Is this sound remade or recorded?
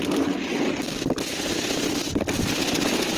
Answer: recorded